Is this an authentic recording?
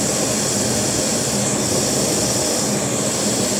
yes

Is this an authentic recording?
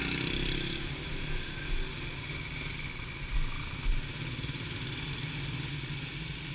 yes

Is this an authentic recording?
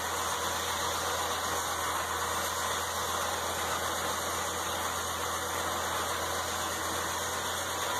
yes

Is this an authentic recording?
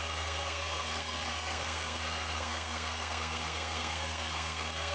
no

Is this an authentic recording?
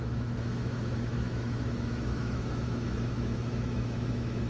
no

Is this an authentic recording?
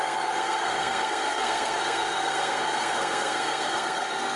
no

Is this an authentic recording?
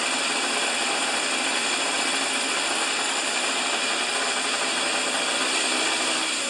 yes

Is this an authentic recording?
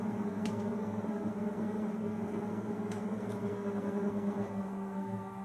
no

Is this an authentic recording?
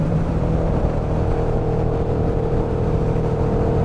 no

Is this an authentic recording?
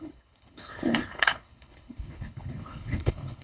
no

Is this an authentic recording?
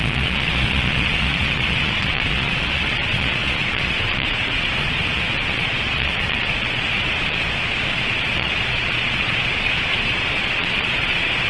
no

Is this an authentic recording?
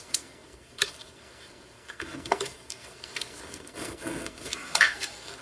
no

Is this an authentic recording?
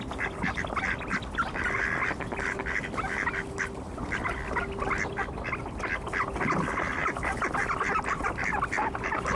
yes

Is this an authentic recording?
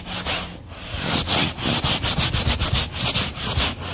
yes